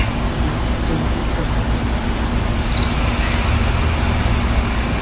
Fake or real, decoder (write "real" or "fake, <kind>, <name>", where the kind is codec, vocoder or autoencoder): real